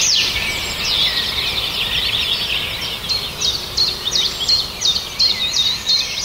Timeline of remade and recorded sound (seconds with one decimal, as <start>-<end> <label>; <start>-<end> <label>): 0.0-6.2 recorded